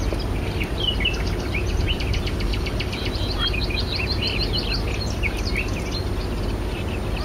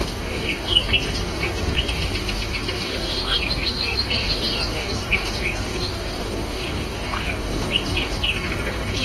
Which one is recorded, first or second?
first